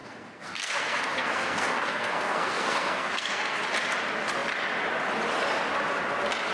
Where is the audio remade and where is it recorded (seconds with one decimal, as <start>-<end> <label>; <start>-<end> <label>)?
0.0-3.6 remade; 3.6-6.5 recorded